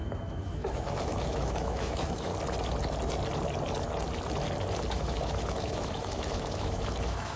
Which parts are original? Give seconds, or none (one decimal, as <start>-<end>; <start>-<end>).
2.3-4.9